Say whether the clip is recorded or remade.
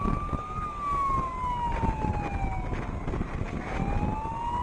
recorded